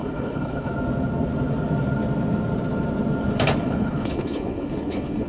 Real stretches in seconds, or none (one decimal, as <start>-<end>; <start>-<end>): 0.7-3.6